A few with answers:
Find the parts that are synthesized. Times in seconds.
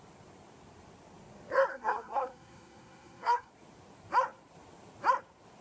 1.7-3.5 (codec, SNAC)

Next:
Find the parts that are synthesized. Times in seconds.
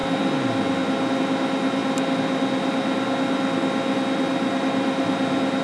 none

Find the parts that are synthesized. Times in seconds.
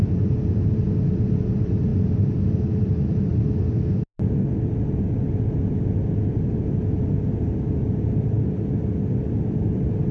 none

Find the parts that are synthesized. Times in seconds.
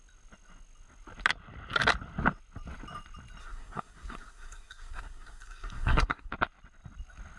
3.4-6.3 (codec, SNAC)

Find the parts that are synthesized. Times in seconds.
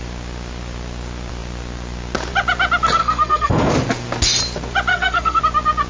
3.0-3.7 (codec, SNAC); 4.9-5.4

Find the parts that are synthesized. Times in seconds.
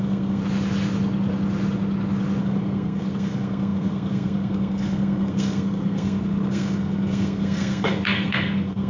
0.0-0.4 (codec, SNAC); 2.4-8.9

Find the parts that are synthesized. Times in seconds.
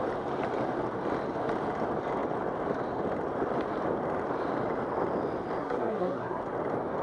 5.6-6.4 (codec, SNAC)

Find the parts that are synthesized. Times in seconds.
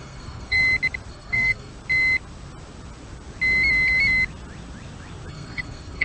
0.0-0.6 (codec, SNAC); 1.1-1.7; 5.3-6.0